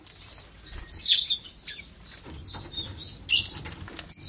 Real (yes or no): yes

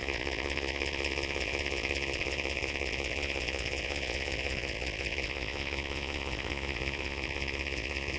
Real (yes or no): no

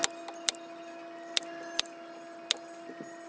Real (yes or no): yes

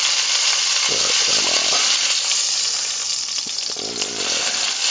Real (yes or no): yes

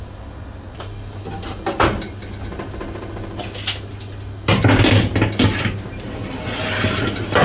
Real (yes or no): yes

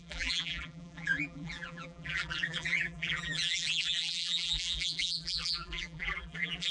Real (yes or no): no